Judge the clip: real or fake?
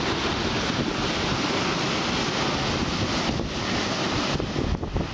real